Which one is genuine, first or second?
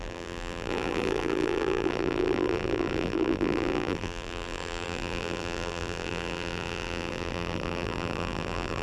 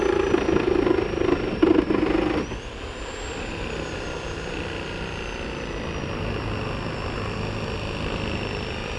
second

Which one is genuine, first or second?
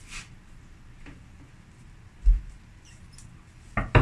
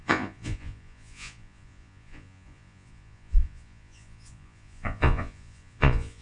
first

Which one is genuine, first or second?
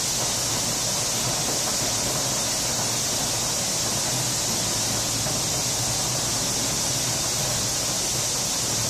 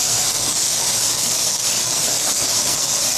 first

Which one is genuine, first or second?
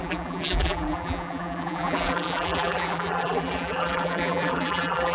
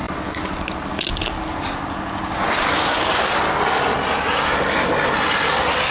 second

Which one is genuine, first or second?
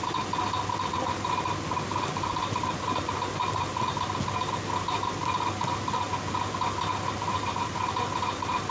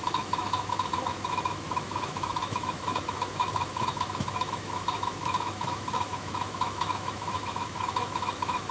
first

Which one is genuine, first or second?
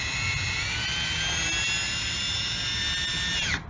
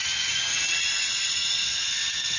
first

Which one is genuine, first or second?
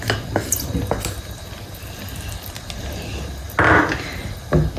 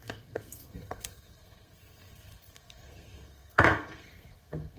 first